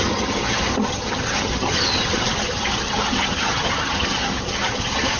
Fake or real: fake